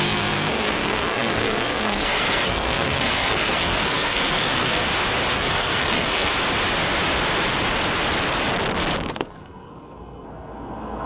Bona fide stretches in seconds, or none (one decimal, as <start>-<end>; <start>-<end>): 4.8-5.3; 6.3-9.1